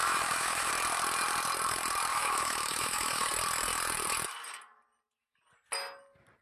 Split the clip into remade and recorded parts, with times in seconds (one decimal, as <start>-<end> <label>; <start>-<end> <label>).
0.0-0.7 remade; 0.7-2.1 recorded; 2.1-3.3 remade; 3.3-6.4 recorded

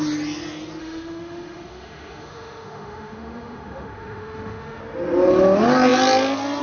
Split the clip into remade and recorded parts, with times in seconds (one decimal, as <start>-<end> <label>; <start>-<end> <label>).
0.0-0.8 recorded; 0.8-4.8 remade; 4.8-6.6 recorded

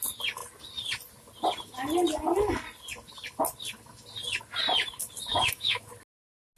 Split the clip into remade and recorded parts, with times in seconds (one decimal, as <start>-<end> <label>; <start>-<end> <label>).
0.0-5.3 recorded; 5.3-5.9 remade; 5.9-6.6 recorded

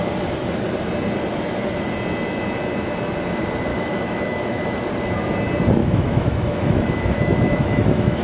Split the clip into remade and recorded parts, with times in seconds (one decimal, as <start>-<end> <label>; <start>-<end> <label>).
0.0-3.7 recorded; 3.7-4.9 remade; 4.9-5.8 recorded; 5.8-8.2 remade

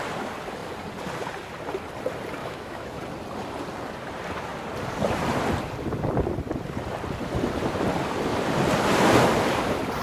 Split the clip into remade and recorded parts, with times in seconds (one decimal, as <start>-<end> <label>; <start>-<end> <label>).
0.0-2.4 recorded; 2.4-3.0 remade; 3.0-10.0 recorded